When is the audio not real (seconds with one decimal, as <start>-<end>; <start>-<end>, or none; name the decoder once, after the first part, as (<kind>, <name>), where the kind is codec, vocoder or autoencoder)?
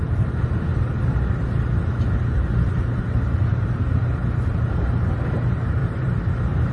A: 5.8-6.7 (vocoder, BigVGAN v2)